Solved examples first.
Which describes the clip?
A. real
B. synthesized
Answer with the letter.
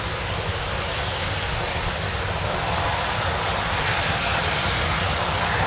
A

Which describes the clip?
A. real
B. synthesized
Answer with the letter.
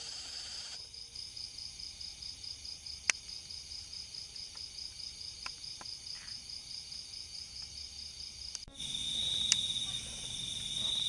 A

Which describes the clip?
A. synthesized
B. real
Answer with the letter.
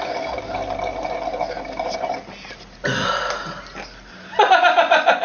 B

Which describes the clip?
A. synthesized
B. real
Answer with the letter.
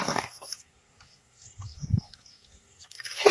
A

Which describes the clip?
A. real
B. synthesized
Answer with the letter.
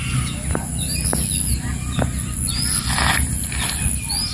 A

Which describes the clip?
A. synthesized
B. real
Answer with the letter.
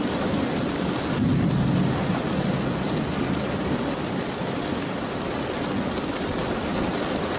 B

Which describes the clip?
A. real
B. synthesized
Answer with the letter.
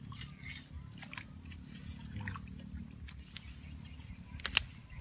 A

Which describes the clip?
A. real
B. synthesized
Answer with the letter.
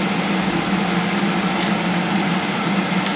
A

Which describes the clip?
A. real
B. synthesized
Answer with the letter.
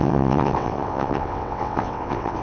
B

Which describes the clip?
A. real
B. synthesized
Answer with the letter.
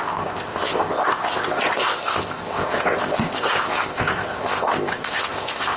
B